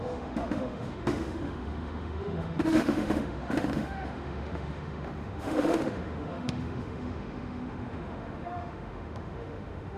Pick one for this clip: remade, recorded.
remade